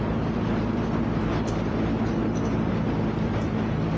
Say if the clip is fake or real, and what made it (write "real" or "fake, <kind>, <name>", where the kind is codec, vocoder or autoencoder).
real